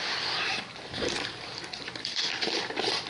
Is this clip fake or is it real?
fake